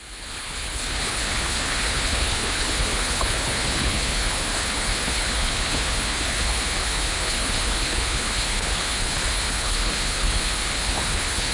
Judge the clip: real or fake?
fake